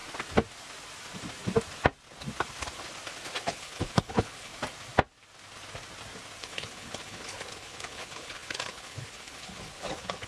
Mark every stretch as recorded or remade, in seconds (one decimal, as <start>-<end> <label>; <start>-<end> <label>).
0.0-3.4 recorded; 3.4-4.5 remade; 4.5-6.4 recorded; 6.4-10.3 remade